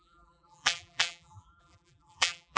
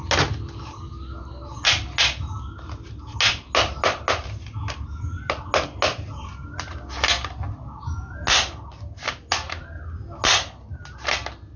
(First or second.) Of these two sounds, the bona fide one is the second